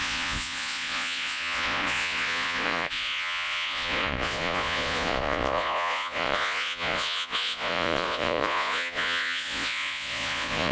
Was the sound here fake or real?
fake